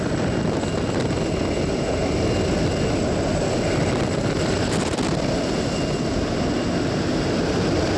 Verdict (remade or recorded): recorded